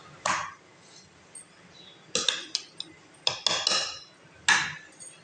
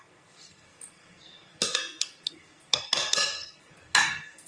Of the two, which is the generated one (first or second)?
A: second